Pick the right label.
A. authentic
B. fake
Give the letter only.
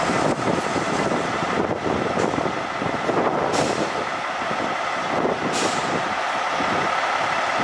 A